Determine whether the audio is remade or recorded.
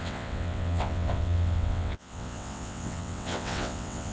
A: remade